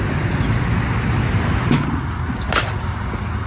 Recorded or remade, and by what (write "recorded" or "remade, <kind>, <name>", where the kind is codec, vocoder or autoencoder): recorded